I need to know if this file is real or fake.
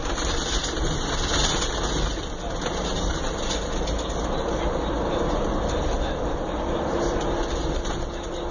real